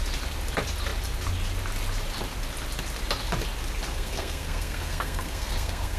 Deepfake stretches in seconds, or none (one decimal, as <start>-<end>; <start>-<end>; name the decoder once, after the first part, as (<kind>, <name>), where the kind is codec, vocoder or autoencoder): 3.9-6.0 (codec, SNAC)